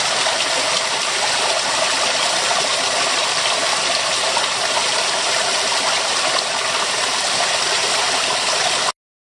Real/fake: real